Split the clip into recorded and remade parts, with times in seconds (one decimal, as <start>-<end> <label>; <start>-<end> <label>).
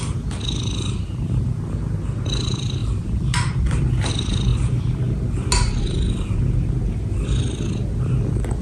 0.0-2.8 recorded; 2.8-4.1 remade; 4.1-8.6 recorded